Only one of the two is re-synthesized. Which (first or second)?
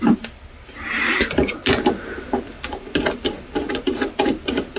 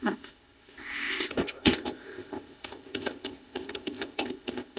second